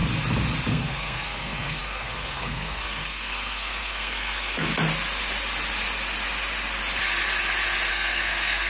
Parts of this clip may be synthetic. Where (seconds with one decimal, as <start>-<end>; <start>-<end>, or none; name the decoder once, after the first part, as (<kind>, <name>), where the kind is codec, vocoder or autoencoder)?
0.7-4.7 (codec, SNAC); 7.9-8.7